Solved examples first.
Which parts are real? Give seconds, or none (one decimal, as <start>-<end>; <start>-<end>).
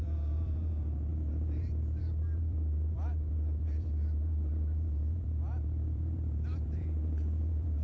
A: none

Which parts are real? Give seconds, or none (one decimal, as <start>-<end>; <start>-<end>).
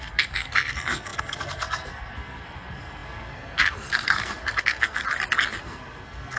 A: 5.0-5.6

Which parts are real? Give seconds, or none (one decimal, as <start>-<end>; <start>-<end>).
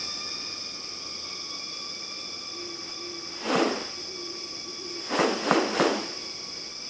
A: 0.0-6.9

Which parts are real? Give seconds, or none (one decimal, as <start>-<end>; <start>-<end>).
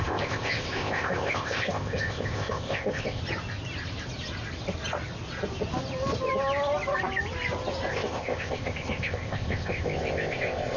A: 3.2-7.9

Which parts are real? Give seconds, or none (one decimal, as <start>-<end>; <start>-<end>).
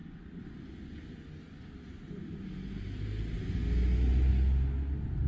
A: 0.0-5.3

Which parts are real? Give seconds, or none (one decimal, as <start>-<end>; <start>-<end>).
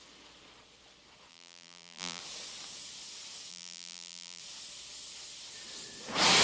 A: 0.0-1.3; 2.2-3.5; 4.4-6.4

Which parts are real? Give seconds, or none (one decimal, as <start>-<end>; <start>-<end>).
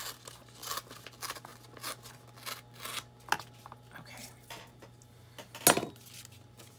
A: 0.0-6.8